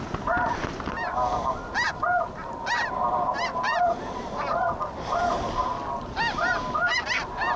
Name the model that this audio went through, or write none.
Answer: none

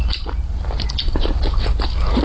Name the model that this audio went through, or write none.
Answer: none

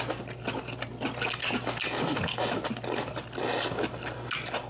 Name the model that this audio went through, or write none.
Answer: none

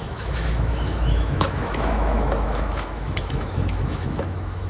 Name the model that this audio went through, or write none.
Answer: autoencoder, DAC-VAE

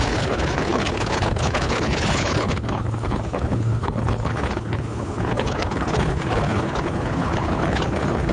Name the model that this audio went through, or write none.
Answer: codec, HILCodec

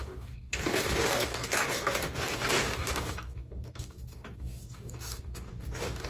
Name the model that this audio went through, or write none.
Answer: codec, DAC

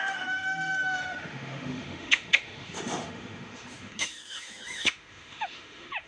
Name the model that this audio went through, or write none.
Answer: autoencoder, DAC-VAE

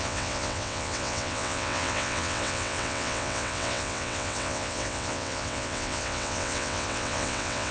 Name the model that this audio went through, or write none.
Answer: vocoder, WaveNeXt